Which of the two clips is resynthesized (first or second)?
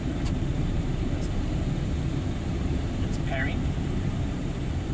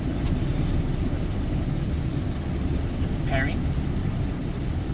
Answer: first